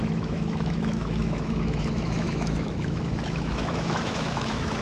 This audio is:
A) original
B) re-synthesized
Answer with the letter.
B